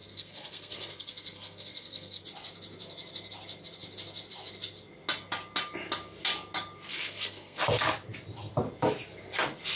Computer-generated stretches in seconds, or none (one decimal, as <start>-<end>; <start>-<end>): 0.0-2.2; 6.9-7.6